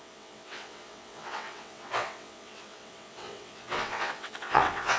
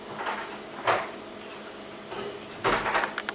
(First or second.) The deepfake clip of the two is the first